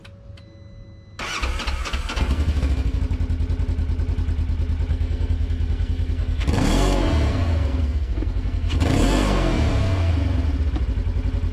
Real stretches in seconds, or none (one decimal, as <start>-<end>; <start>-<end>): 0.0-1.8; 3.0-4.9; 10.1-11.5